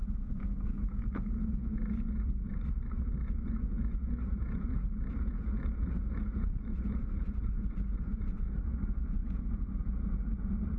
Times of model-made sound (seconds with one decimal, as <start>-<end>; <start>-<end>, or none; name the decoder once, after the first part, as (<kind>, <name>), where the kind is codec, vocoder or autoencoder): 0.0-2.5 (vocoder, Vocos); 3.4-10.8